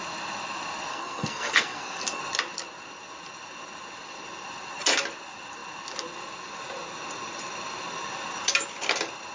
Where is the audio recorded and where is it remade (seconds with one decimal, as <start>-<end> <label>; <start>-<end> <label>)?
0.0-0.9 recorded; 0.9-2.2 remade; 2.2-9.3 recorded